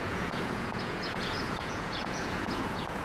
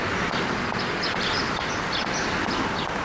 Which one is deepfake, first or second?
first